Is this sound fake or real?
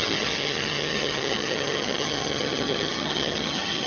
fake